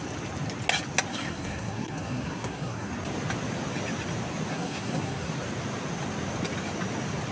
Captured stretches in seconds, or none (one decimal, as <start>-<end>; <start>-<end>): 0.0-1.1; 2.9-4.5; 5.3-7.3